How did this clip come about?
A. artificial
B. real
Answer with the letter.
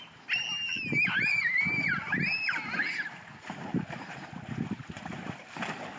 B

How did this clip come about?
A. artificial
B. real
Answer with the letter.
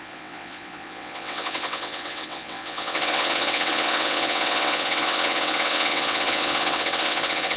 A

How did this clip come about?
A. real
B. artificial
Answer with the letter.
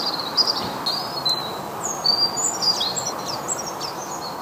A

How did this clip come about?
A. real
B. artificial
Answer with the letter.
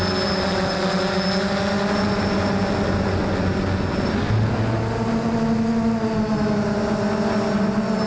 A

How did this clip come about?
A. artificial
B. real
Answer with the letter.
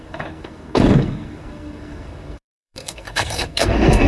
A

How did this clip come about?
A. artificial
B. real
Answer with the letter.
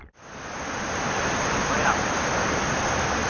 B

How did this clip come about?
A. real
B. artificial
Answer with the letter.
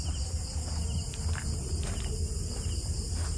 A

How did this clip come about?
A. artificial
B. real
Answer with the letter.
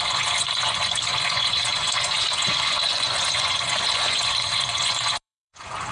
A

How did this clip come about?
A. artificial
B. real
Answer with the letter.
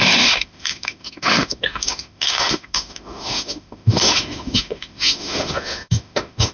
A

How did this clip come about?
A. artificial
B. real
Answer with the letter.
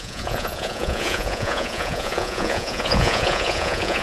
A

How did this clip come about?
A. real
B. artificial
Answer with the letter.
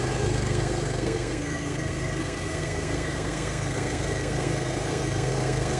B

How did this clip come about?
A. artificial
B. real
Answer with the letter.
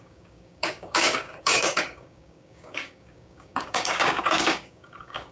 A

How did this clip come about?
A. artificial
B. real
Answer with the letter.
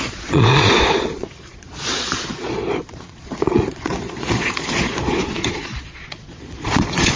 A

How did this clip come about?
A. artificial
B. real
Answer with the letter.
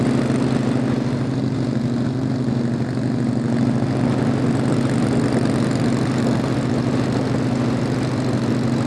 B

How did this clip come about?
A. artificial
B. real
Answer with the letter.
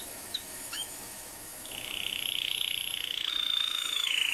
A